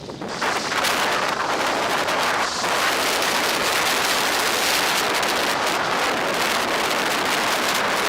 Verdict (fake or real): real